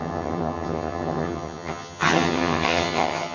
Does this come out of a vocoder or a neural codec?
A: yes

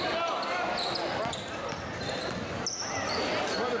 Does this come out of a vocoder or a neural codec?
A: no